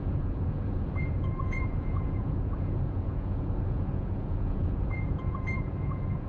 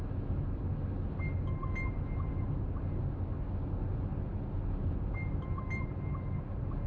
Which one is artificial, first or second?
first